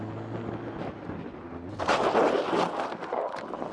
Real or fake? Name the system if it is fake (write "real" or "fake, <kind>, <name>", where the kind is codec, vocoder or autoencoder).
real